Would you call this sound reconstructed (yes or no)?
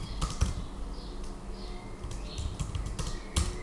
no